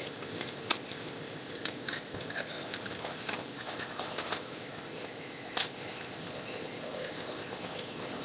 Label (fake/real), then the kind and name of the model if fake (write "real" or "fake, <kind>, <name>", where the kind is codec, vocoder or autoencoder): fake, codec, ZipCodec